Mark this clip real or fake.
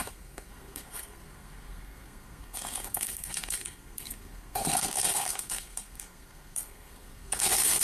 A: fake